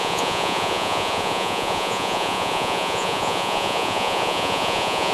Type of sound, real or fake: fake